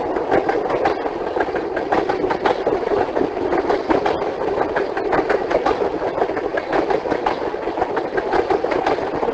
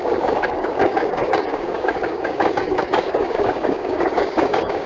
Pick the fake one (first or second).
second